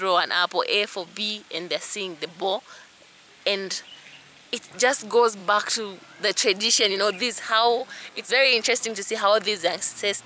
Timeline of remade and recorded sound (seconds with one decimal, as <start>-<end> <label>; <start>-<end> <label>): 0.0-7.8 recorded; 7.8-8.3 remade; 8.3-10.3 recorded

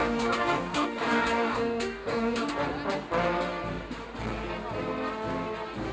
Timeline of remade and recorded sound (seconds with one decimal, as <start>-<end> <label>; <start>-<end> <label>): 0.0-2.5 remade; 2.5-5.9 recorded